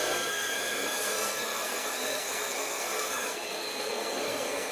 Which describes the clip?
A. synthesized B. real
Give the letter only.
A